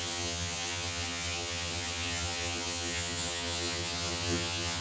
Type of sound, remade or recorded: remade